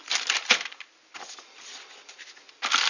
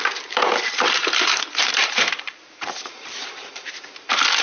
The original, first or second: first